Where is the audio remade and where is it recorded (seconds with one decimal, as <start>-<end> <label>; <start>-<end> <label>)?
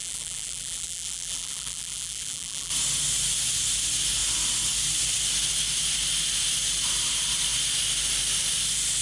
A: 0.0-2.7 remade; 2.7-9.0 recorded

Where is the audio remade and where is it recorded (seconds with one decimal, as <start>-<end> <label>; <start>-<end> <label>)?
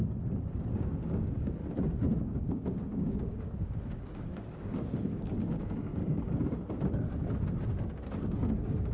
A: 0.0-1.6 remade; 1.6-2.2 recorded; 2.2-6.0 remade; 6.0-8.2 recorded; 8.2-8.9 remade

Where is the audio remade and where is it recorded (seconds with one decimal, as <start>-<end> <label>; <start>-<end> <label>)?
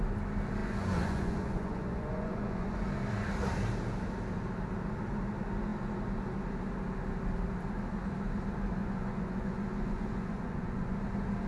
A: 0.0-0.6 recorded; 0.6-2.8 remade; 2.8-8.8 recorded; 8.8-11.0 remade; 11.0-11.5 recorded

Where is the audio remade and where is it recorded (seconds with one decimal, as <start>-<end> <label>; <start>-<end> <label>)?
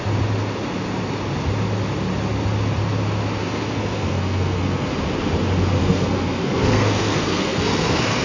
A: 0.0-3.4 recorded; 3.4-4.9 remade; 4.9-5.8 recorded; 5.8-8.2 remade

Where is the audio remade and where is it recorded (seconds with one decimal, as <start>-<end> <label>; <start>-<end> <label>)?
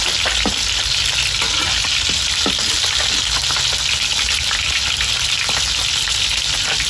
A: 0.0-6.9 recorded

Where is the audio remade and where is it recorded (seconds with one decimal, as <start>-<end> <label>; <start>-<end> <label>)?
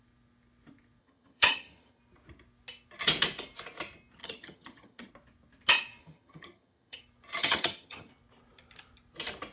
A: 0.0-1.0 recorded; 1.0-2.0 remade; 2.0-4.2 recorded; 4.2-5.1 remade; 5.1-6.0 recorded; 6.0-7.0 remade; 7.0-7.4 recorded; 7.4-8.1 remade; 8.1-9.5 recorded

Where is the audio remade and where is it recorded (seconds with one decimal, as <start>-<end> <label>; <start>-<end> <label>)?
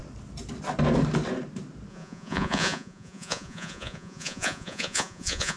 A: 0.0-1.9 recorded; 1.9-5.6 remade